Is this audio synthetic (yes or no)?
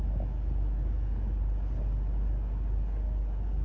no